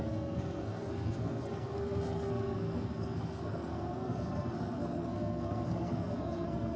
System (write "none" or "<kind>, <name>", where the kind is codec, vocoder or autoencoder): codec, SNAC